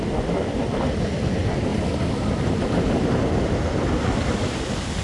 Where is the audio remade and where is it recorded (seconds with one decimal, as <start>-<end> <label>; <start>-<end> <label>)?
0.0-5.0 recorded